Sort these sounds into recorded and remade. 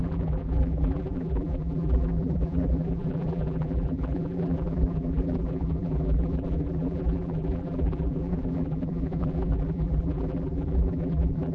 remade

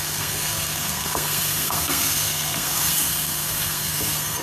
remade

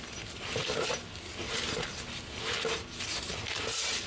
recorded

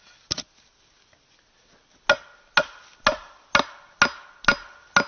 recorded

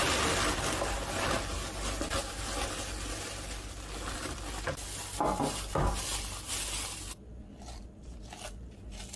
recorded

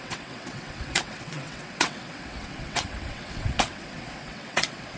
remade